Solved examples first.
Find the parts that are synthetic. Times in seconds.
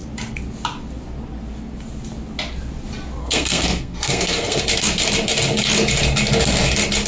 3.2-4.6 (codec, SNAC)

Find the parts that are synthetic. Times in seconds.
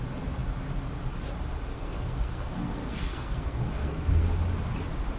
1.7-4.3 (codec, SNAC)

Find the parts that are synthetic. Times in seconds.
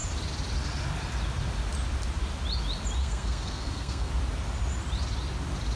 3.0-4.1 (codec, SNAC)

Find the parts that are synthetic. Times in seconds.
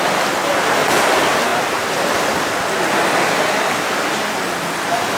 none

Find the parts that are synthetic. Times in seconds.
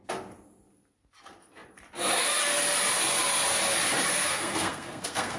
4.1-5.4 (codec, SNAC)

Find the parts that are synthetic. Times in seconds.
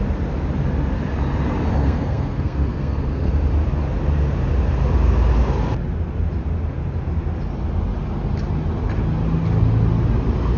1.8-3.3 (codec, SNAC)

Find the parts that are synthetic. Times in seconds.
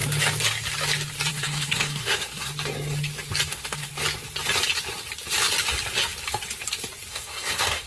1.3-2.5 (codec, SNAC); 3.5-3.9; 7.1-7.9